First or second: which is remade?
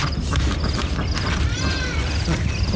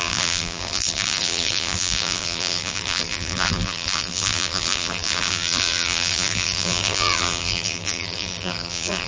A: second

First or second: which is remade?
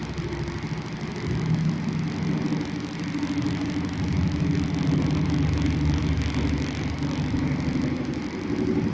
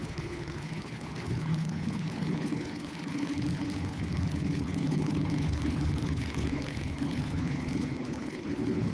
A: second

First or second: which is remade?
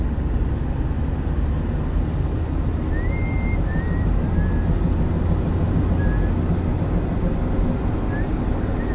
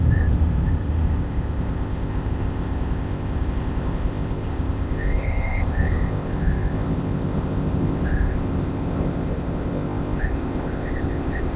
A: second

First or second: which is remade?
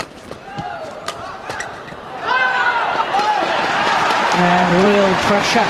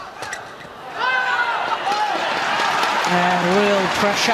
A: first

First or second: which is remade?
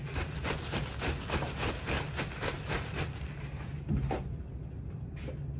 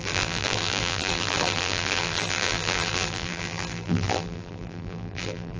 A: second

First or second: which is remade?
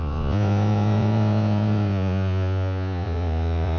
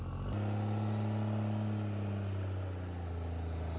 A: first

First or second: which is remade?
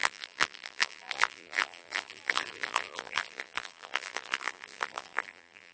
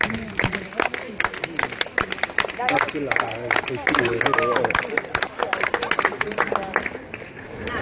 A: first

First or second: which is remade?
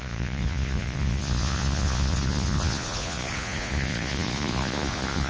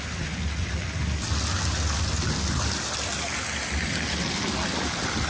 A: first